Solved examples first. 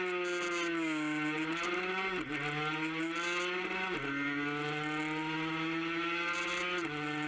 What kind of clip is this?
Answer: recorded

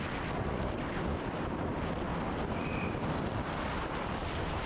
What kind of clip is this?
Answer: recorded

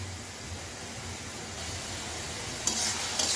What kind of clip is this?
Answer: recorded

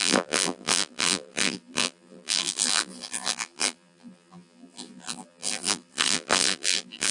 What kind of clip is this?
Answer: remade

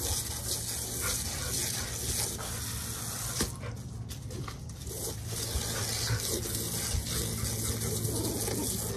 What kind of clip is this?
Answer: recorded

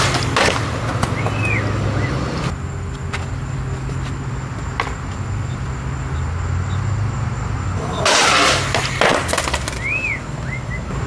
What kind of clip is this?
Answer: recorded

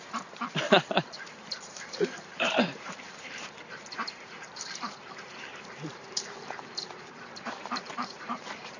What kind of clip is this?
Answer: remade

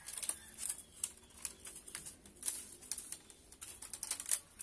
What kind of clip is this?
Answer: recorded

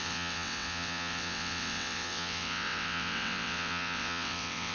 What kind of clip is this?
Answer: remade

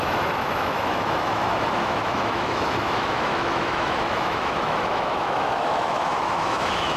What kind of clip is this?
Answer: remade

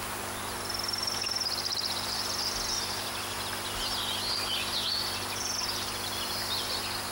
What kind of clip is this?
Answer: recorded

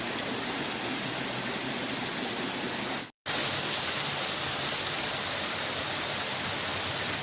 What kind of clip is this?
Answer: recorded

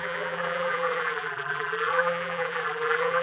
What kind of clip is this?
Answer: remade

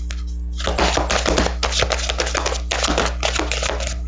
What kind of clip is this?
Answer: recorded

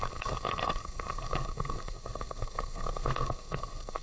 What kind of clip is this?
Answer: remade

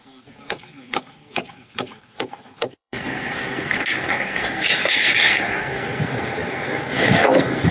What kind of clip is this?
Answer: remade